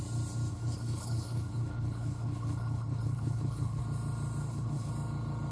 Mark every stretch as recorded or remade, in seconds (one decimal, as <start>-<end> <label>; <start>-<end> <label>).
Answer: 0.0-0.5 recorded; 0.5-3.8 remade; 3.8-4.4 recorded; 4.4-4.9 remade; 4.9-5.5 recorded